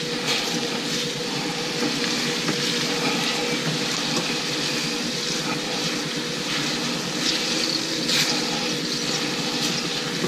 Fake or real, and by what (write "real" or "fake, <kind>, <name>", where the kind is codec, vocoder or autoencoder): real